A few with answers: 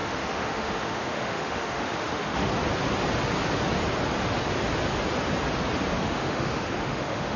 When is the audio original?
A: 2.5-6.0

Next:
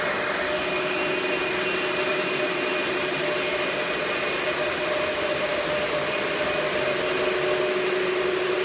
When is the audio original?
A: 0.0-8.6